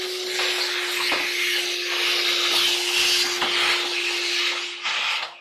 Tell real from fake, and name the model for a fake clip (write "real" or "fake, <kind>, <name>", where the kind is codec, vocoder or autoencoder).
real